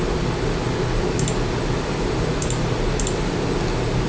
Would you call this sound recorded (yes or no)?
yes